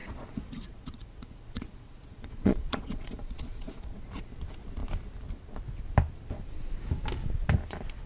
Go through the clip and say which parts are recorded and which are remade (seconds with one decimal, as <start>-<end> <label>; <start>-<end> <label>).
0.0-4.0 remade; 4.0-8.1 recorded